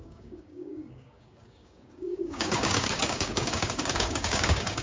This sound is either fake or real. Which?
fake